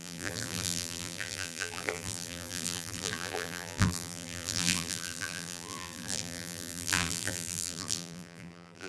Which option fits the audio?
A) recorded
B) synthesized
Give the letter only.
B